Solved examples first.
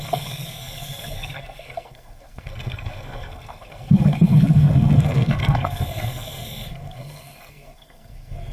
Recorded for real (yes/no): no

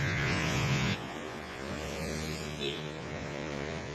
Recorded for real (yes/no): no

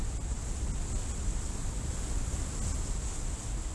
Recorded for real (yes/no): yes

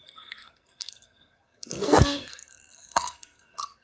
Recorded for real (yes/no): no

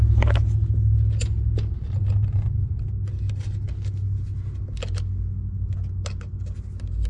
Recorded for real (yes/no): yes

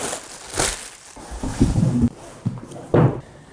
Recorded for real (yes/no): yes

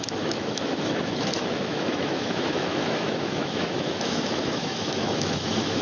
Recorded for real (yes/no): no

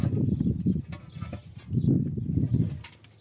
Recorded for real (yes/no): yes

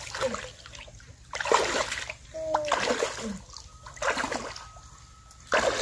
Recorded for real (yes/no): yes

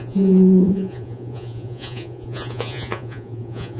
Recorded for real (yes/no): no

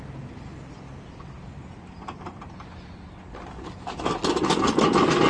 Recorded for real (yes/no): yes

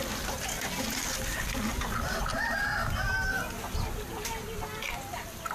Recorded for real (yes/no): yes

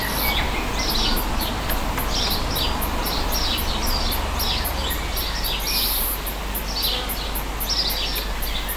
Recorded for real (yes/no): yes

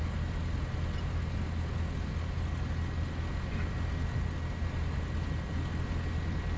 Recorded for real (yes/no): yes